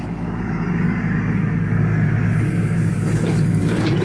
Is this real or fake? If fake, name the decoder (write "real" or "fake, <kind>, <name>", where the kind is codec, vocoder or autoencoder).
fake, codec, DAC